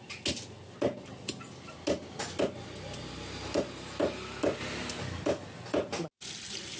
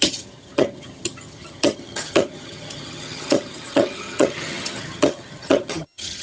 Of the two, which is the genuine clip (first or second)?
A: first